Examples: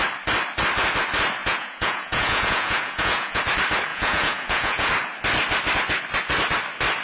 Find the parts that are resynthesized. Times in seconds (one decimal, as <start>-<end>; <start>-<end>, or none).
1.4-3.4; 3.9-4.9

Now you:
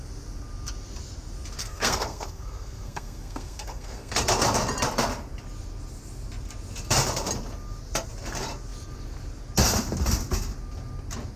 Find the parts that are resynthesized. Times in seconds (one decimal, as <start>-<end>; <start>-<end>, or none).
1.6-4.1

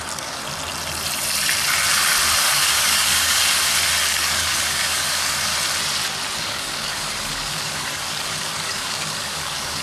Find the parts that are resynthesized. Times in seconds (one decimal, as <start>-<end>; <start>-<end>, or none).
0.0-0.4; 2.4-3.4; 4.1-5.5; 6.4-9.8

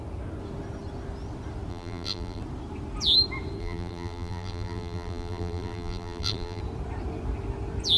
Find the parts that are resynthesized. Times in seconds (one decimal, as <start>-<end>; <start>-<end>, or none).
1.7-2.4; 3.6-6.6

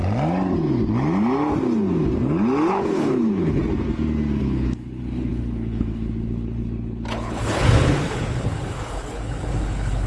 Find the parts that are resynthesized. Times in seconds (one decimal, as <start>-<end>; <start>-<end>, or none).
2.7-3.6; 4.4-10.1